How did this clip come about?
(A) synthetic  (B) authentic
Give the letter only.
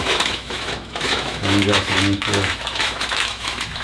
A